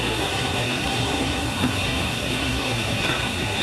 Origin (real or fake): fake